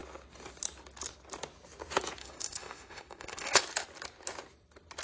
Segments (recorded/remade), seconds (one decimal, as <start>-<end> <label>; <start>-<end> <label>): 0.0-2.2 recorded; 2.2-3.6 remade; 3.6-5.0 recorded